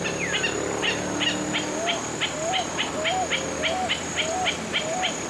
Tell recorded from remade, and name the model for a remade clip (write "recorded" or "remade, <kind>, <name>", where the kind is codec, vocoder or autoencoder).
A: recorded